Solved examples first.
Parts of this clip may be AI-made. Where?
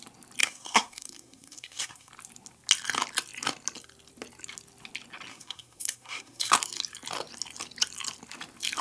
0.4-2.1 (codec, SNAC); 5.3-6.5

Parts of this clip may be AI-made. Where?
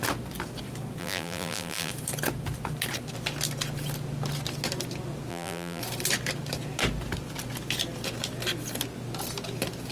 1.0-1.9 (vocoder, BigVGAN v2); 5.3-5.8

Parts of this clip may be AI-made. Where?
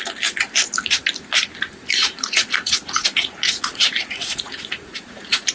2.0-5.5 (vocoder, Vocos)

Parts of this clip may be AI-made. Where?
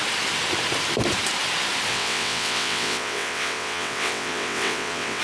1.9-5.2 (vocoder, WaveNeXt)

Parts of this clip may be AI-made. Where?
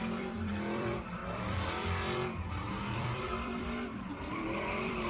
0.0-5.1 (vocoder, BigVGAN v2)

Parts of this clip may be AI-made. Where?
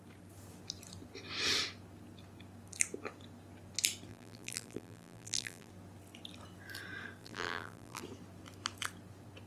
4.1-5.7 (vocoder, BigVGAN v2); 7.2-8.0